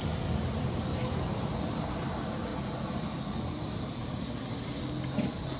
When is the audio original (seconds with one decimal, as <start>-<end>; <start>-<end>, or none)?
0.0-0.9; 2.1-2.5; 4.0-5.6